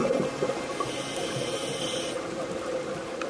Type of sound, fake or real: real